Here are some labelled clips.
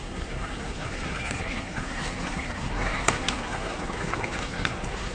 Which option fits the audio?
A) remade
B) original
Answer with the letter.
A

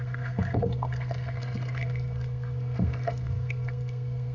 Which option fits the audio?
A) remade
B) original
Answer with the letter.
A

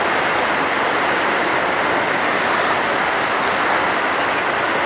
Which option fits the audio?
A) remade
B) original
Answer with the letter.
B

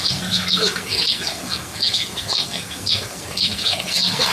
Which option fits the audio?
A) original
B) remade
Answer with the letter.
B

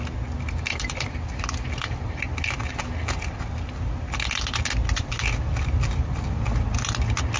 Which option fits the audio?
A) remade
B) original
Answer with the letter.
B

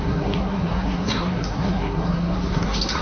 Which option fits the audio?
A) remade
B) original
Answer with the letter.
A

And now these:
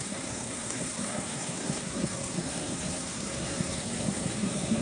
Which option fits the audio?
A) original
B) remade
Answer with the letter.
B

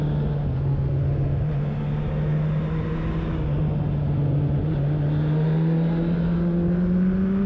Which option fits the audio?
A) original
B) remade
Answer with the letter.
A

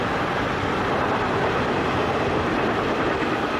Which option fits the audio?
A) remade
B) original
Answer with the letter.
B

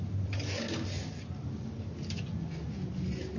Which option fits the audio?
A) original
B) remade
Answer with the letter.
A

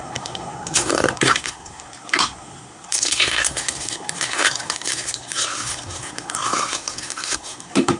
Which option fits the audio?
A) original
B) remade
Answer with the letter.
B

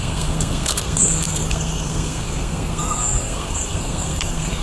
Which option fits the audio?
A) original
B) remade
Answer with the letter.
B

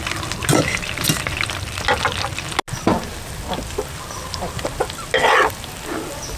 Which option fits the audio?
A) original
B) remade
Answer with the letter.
A